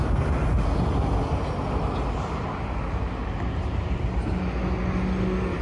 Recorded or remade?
recorded